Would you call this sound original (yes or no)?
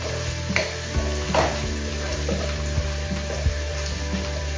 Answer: yes